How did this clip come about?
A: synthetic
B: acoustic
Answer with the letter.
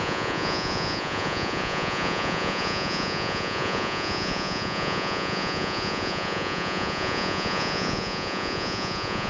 A